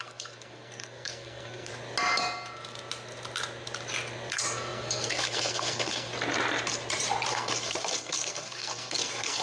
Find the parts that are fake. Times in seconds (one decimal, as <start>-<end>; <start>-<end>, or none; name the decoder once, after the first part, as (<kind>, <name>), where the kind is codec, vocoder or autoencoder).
0.0-1.7 (codec, SNAC); 4.3-6.1; 7.3-9.4